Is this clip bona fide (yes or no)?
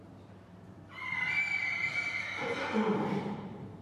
no